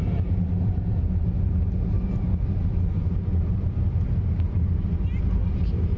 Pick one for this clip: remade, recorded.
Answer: recorded